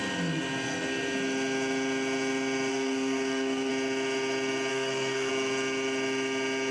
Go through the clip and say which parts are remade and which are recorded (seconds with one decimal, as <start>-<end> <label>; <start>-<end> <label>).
0.0-2.7 recorded; 2.7-3.7 remade; 3.7-4.7 recorded; 4.7-5.3 remade; 5.3-6.7 recorded